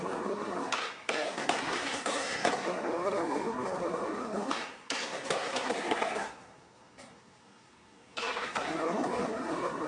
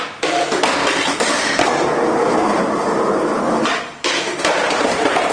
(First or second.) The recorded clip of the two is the second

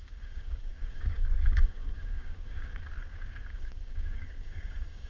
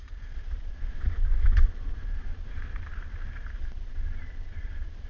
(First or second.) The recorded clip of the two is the second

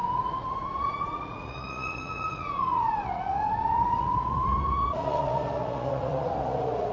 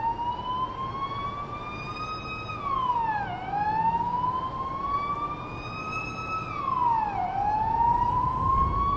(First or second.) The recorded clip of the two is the second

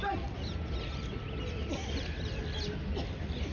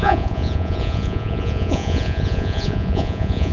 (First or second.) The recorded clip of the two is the first